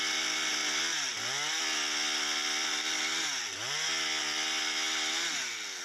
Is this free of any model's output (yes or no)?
yes